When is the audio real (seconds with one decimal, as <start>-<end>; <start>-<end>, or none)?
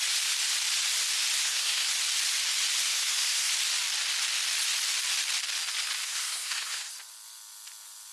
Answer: 0.0-1.4; 1.9-2.9; 3.5-6.0; 6.9-8.1